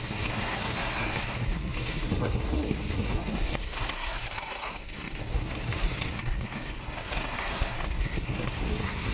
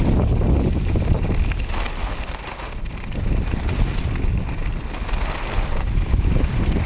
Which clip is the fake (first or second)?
first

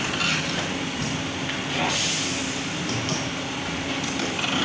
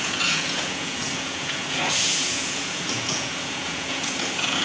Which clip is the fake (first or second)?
second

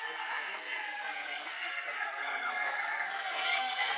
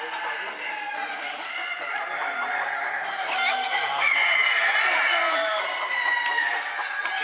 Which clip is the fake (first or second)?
first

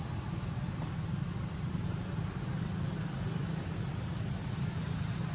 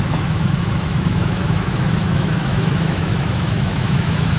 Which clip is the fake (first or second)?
second